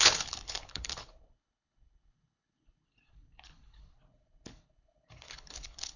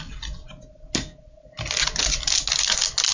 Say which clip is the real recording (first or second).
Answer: second